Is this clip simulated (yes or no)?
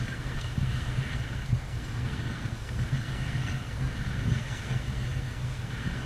yes